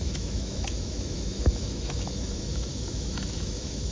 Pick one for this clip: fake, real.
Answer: fake